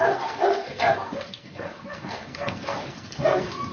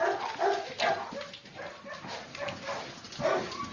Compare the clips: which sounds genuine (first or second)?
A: second